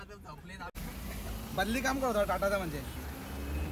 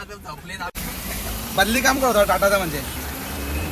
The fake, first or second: second